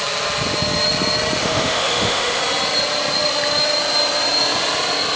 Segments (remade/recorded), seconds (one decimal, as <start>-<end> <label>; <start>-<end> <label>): 0.0-1.4 recorded; 1.4-2.4 remade; 2.4-5.2 recorded